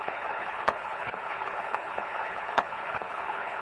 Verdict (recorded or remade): remade